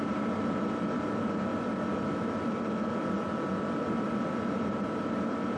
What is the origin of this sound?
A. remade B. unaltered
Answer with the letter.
A